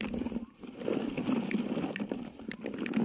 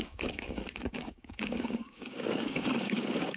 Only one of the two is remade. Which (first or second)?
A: second